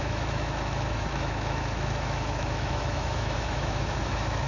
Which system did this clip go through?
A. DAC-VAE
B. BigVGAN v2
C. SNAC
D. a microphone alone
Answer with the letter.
A